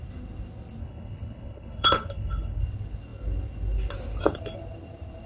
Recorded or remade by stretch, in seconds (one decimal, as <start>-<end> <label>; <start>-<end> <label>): 0.0-0.8 recorded; 0.8-2.6 remade; 2.6-5.3 recorded